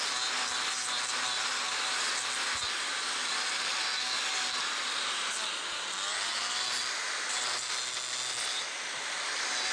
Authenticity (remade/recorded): recorded